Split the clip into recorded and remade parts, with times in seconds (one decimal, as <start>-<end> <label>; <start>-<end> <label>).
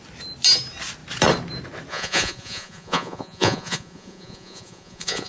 0.0-1.9 recorded; 1.9-5.3 remade